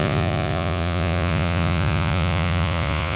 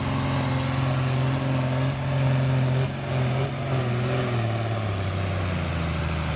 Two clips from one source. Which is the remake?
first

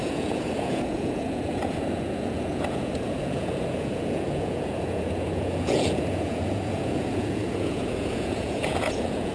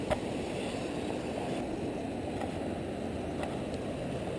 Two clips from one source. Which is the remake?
first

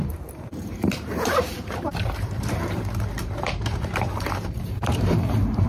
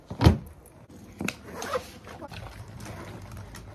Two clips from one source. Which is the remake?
first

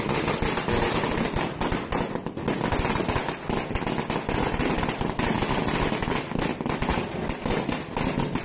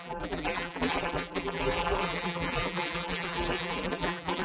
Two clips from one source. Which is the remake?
second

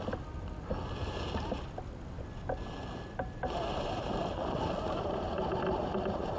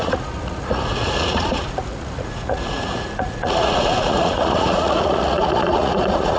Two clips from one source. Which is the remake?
second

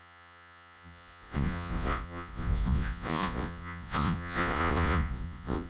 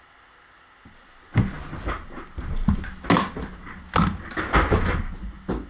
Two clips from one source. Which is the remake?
first